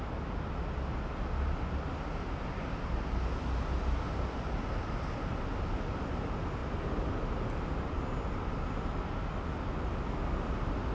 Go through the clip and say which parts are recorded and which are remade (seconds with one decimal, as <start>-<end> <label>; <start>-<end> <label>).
0.0-10.9 recorded

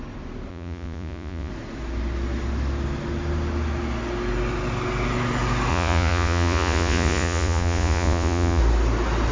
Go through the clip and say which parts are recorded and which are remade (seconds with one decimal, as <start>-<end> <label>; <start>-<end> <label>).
0.0-0.5 recorded; 0.5-1.5 remade; 1.5-5.7 recorded; 5.7-8.6 remade; 8.6-9.3 recorded